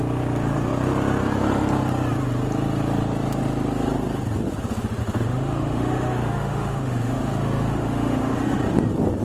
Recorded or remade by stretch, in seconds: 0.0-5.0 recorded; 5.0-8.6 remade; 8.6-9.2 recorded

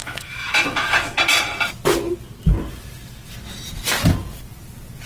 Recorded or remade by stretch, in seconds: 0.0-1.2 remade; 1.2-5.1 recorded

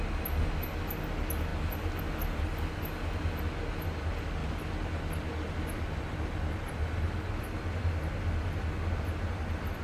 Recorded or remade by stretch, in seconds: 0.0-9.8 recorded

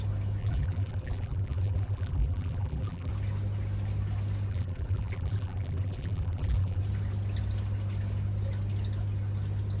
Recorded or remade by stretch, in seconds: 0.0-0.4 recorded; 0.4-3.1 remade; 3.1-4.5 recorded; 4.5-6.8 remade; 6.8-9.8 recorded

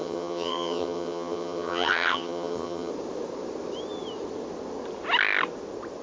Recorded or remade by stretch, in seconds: 0.0-2.9 remade; 2.9-6.0 recorded

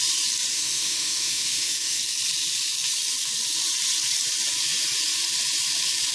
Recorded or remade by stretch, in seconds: 0.0-0.5 recorded; 0.5-2.0 remade; 2.0-6.1 recorded

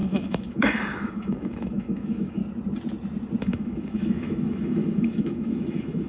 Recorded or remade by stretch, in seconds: 0.0-2.4 remade; 2.4-3.4 recorded; 3.4-6.1 remade